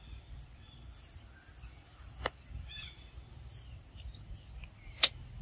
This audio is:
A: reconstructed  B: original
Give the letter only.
B